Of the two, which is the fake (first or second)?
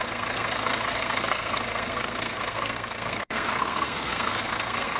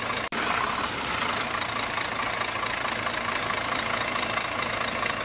first